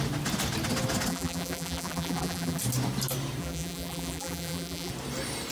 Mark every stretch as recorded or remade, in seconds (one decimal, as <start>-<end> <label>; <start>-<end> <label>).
0.0-1.1 recorded; 1.1-2.6 remade; 2.6-3.4 recorded; 3.4-4.9 remade; 4.9-5.5 recorded